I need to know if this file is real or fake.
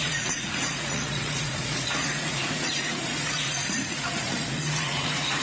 fake